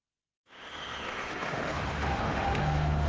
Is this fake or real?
fake